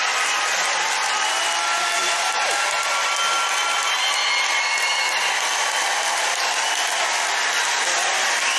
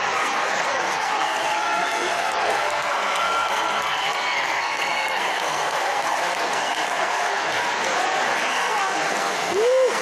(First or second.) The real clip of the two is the first